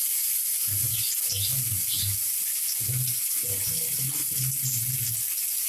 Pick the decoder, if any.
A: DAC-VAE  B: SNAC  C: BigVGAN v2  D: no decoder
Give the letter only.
D